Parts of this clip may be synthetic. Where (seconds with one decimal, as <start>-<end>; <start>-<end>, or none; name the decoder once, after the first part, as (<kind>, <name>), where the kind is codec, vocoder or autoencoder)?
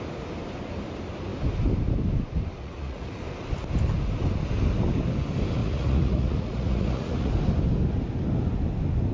2.6-3.2 (vocoder, Vocos); 5.6-7.3